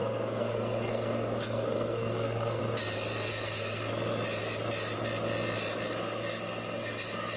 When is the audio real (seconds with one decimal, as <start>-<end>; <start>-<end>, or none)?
2.6-3.3; 3.9-7.4